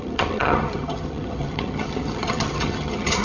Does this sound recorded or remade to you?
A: remade